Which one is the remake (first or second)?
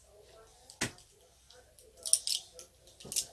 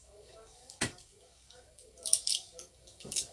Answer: second